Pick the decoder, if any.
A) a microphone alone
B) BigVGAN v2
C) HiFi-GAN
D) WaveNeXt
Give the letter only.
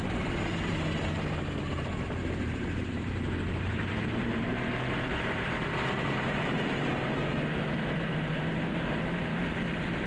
B